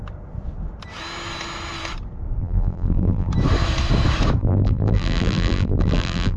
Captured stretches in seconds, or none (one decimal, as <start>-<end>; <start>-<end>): 0.0-2.4; 3.3-4.4